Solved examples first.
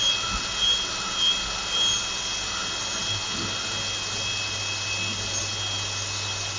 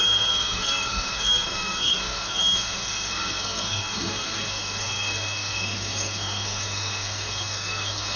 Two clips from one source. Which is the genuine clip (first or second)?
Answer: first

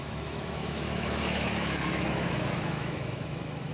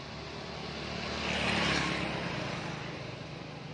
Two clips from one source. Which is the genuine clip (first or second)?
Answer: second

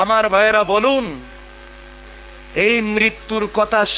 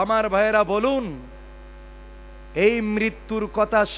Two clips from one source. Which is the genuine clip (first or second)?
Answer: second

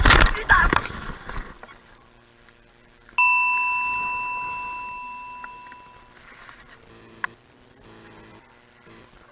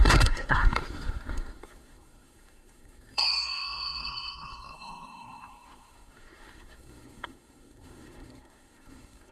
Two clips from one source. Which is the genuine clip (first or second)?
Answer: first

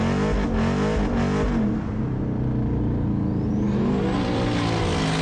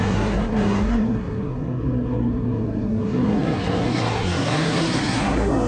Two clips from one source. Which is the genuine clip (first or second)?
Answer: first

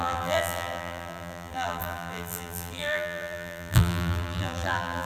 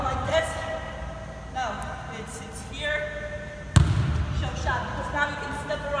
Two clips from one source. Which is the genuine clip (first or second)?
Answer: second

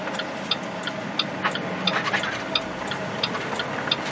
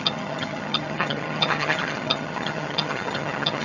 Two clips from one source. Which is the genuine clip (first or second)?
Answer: first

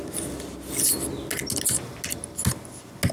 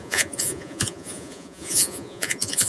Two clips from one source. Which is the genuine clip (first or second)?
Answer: first